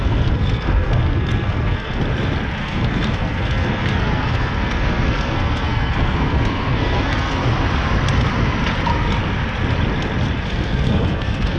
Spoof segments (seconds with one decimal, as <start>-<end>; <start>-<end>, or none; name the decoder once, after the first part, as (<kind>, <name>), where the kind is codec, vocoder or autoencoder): 0.0-2.0 (codec, SNAC); 2.6-7.4; 10.5-11.6